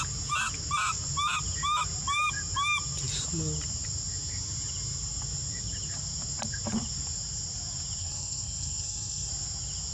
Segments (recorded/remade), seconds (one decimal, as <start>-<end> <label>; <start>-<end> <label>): 0.0-8.0 recorded; 8.0-9.3 remade; 9.3-9.9 recorded